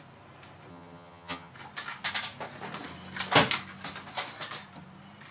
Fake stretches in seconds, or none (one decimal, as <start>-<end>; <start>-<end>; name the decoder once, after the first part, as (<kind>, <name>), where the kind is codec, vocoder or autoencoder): 0.7-1.5 (vocoder, HiFi-GAN)

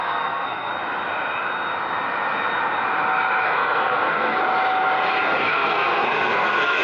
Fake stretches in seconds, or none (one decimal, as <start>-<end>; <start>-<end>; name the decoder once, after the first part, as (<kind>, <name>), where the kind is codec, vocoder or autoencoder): 0.0-0.7 (codec, SNAC); 3.4-4.4; 5.4-6.8

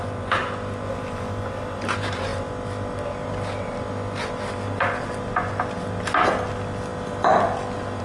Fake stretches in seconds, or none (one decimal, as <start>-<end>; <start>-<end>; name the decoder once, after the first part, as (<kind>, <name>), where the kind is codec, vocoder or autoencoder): none

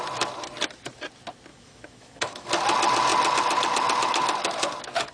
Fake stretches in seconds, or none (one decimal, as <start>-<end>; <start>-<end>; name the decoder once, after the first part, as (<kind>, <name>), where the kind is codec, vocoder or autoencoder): 1.5-2.5 (autoencoder, DAC-VAE)